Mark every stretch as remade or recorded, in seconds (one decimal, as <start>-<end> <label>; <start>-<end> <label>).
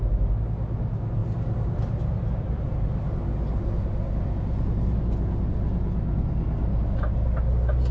0.0-7.9 recorded